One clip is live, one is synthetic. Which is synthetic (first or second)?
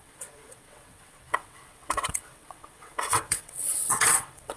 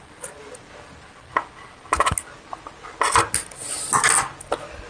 first